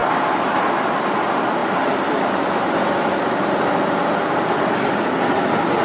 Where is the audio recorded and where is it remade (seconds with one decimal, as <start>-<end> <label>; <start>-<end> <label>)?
0.0-5.8 recorded